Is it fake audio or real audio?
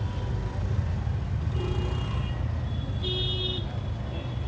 real